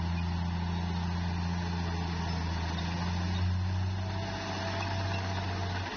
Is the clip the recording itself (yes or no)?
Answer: yes